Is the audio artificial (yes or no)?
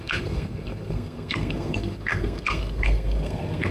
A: yes